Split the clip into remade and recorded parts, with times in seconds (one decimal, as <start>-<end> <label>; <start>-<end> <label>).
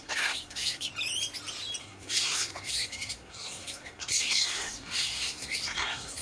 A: 0.0-0.9 remade; 0.9-1.8 recorded; 1.8-6.2 remade